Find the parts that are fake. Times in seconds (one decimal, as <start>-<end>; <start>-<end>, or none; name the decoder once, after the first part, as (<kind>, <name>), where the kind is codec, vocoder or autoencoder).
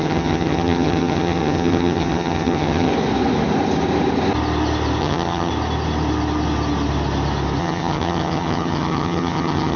0.0-2.9 (vocoder, HiFi-GAN); 5.0-5.5; 7.6-9.8